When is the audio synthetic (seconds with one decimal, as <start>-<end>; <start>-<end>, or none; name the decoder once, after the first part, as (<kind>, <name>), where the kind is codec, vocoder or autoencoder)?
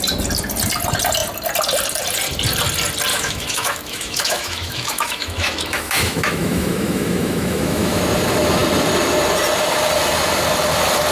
3.1-8.0 (autoencoder, DAC-VAE)